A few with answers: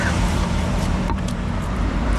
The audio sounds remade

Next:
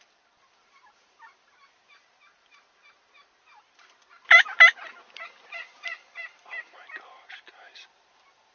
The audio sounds remade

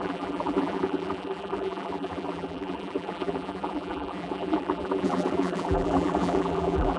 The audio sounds remade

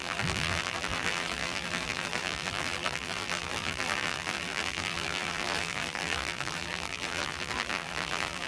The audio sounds remade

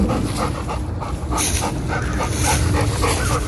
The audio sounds recorded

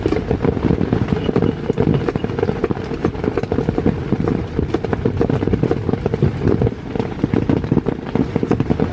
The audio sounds recorded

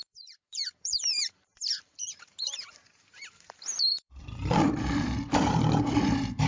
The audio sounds remade